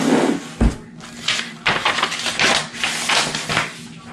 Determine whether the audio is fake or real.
real